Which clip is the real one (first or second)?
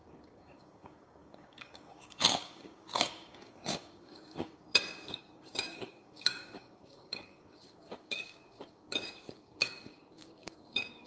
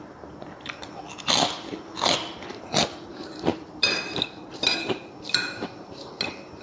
second